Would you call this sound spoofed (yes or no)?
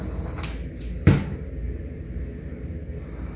no